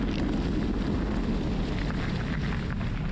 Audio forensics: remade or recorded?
recorded